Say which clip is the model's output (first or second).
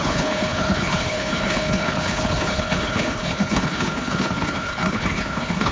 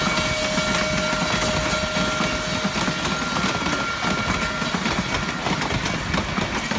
first